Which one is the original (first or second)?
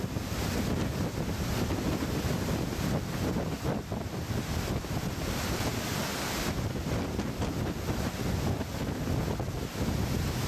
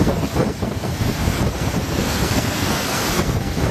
first